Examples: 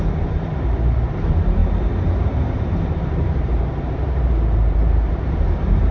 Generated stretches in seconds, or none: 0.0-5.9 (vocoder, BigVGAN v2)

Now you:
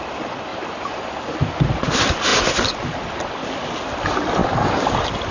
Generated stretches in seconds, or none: 0.5-1.2 (vocoder, BigVGAN v2)

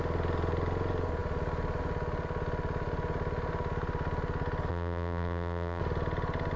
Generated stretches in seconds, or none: 4.7-5.8 (vocoder, BigVGAN v2)